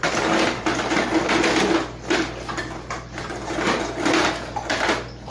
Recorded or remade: recorded